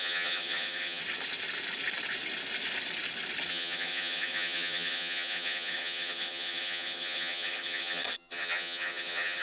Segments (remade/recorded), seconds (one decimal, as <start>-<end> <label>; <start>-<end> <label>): 0.0-1.0 remade; 1.0-3.5 recorded; 3.5-9.4 remade